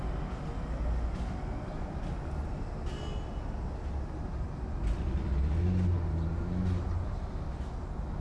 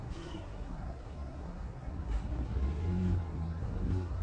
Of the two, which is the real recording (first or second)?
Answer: first